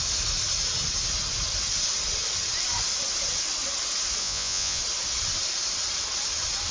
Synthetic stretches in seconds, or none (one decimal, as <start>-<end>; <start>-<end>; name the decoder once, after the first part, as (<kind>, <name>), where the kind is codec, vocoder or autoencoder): 4.2-4.8 (vocoder, Vocos)